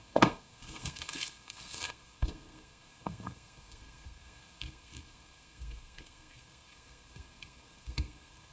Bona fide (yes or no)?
no